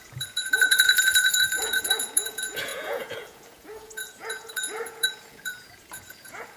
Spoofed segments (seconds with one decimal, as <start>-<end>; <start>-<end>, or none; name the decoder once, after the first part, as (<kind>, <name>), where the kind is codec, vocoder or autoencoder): 0.0-6.6 (vocoder, Vocos)